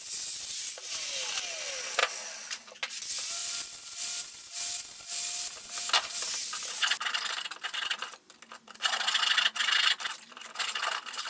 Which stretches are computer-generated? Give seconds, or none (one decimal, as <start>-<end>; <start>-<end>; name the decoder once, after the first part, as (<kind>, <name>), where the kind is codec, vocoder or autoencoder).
3.4-4.4 (vocoder, BigVGAN v2)